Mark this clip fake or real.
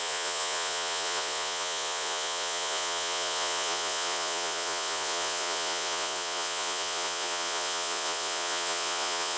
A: fake